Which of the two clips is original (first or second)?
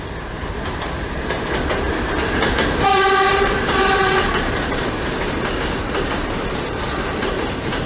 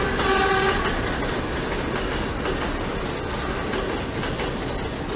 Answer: second